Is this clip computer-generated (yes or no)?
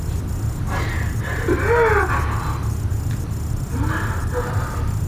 no